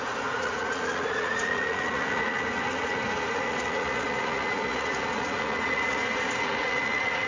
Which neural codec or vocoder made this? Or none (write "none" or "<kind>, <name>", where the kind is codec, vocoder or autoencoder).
vocoder, Vocos